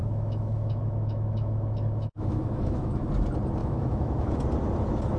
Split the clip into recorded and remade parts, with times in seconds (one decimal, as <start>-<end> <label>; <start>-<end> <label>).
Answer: 0.0-3.1 remade; 3.1-3.6 recorded; 3.6-4.4 remade; 4.4-5.2 recorded